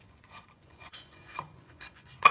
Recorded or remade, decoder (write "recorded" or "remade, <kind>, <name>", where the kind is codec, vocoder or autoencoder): remade, vocoder, Vocos